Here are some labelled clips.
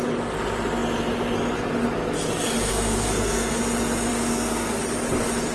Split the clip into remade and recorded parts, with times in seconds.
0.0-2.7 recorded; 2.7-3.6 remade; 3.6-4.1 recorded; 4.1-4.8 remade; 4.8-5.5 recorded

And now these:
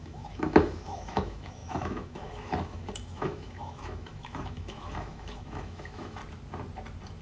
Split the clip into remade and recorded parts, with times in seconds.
0.0-6.2 remade; 6.2-7.2 recorded

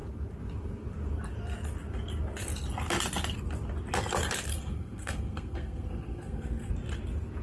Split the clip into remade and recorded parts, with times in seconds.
0.0-4.5 recorded; 4.5-6.7 remade; 6.7-7.4 recorded

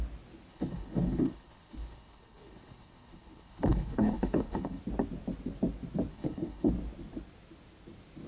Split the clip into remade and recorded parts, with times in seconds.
0.0-0.5 recorded; 0.5-4.8 remade; 4.8-6.1 recorded; 6.1-6.7 remade; 6.7-8.3 recorded

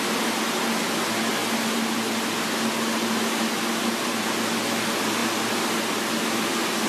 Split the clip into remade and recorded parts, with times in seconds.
0.0-6.9 recorded